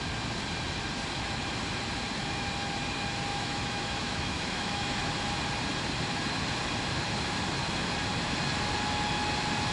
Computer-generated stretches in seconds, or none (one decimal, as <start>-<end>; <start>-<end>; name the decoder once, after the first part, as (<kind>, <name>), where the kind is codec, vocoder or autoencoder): 3.3-5.1 (autoencoder, DAC-VAE)